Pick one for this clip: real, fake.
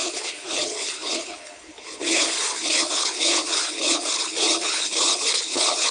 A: fake